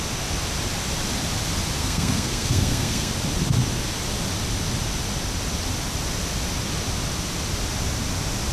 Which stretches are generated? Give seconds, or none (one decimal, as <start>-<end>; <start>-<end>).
1.8-3.1